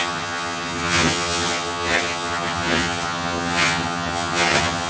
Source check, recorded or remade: remade